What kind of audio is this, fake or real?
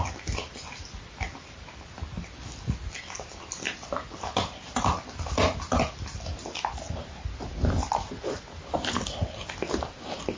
real